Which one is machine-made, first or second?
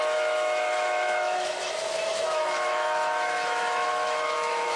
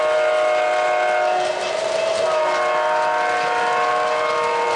first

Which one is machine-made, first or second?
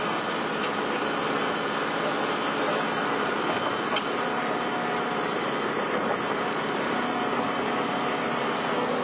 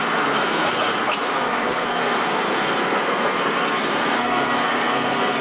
second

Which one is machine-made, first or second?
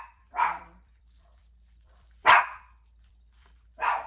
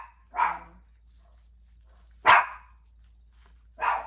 first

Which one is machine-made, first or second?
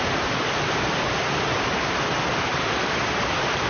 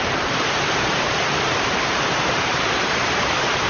second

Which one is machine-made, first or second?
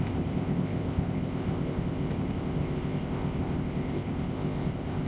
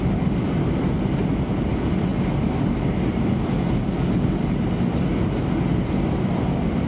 first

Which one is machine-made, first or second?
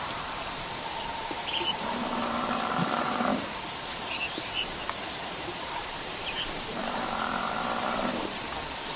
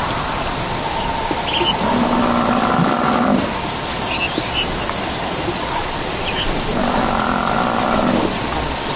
first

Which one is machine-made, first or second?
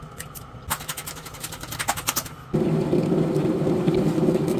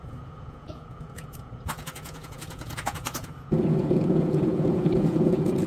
second